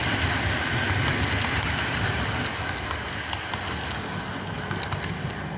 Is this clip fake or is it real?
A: real